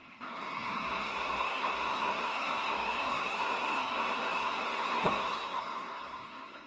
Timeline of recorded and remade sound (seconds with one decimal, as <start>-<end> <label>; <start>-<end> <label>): 0.0-6.7 remade

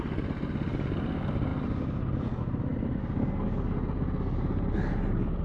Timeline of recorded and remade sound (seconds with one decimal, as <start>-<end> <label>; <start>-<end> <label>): 0.0-5.4 recorded

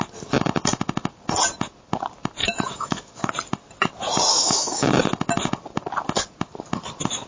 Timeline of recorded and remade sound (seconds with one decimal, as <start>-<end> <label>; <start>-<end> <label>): 0.0-2.4 recorded; 2.4-3.3 remade; 3.3-4.3 recorded; 4.3-4.9 remade; 4.9-7.3 recorded

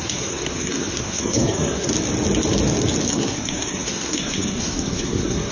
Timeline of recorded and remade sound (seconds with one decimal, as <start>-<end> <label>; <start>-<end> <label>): 0.0-1.9 remade; 1.9-3.1 recorded; 3.1-5.5 remade

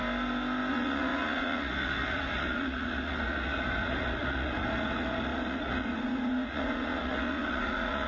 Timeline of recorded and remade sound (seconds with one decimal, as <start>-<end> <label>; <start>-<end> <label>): 0.0-0.7 recorded; 0.7-8.1 remade

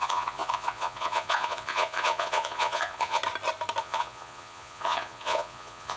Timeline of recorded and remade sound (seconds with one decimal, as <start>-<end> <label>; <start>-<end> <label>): 0.0-3.2 remade; 3.2-3.8 recorded; 3.8-6.0 remade